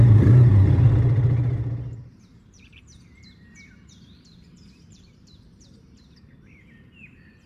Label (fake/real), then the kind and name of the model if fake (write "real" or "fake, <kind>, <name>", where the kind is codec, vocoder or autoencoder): fake, vocoder, BigVGAN v2